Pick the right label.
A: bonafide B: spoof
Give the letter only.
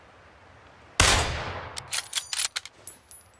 A